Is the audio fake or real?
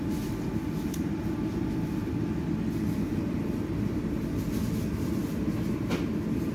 real